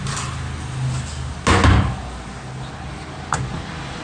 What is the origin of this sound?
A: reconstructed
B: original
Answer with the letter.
B